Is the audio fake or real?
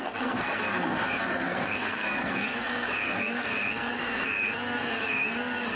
fake